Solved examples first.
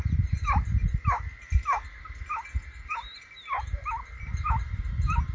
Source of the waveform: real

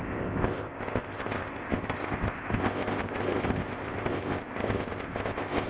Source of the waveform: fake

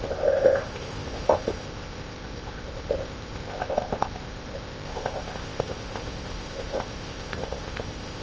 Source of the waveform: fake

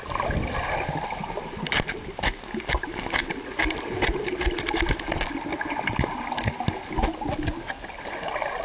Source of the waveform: real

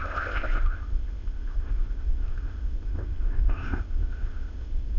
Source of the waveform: fake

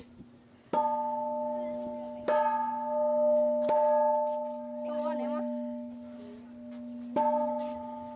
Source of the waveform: real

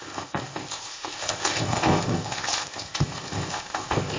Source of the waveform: fake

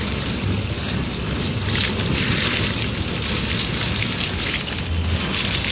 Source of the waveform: real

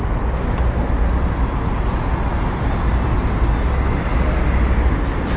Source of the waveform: real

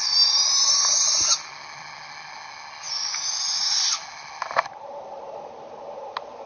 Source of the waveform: real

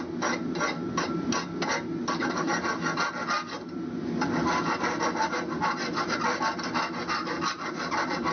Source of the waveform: real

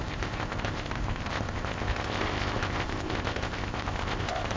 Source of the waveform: fake